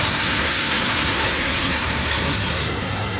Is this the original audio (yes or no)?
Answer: no